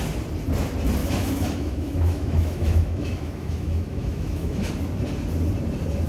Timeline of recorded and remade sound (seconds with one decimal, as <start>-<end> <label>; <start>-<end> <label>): 0.0-1.0 recorded; 1.0-4.7 remade; 4.7-6.1 recorded